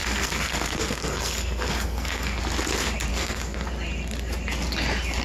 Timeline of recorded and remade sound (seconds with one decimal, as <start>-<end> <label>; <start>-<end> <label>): 0.0-2.4 remade; 2.4-3.1 recorded; 3.1-3.7 remade; 3.7-5.2 recorded